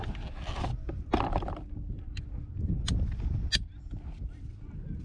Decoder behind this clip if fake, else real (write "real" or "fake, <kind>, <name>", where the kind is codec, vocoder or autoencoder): real